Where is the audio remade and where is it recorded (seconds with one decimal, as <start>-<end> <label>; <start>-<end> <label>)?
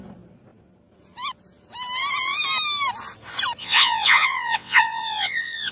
0.0-3.6 recorded; 3.6-5.7 remade